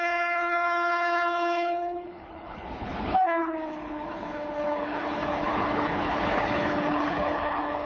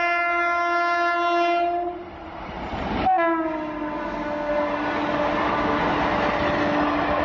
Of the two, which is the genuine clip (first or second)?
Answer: second